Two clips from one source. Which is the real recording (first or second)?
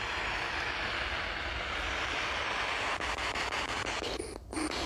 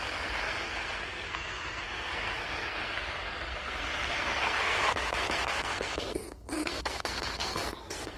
first